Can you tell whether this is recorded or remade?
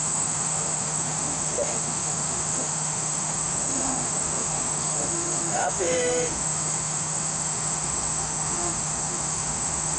remade